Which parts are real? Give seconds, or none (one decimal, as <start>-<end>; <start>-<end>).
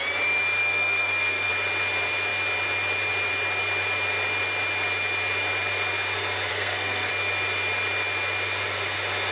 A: 0.0-0.6; 1.5-6.5; 7.1-9.3